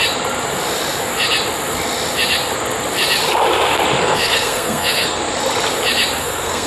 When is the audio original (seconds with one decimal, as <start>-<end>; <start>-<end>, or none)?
0.0-4.0; 5.2-6.2